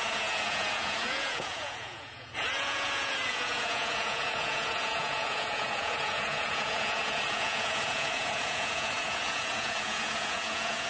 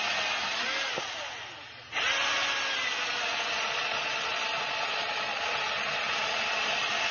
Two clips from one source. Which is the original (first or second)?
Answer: second